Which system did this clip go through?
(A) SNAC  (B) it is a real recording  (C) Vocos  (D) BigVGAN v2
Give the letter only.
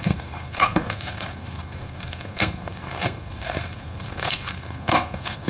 A